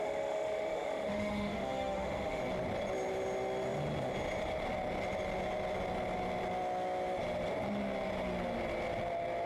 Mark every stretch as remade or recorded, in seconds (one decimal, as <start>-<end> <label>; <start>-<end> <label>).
0.0-2.4 remade; 2.4-9.5 recorded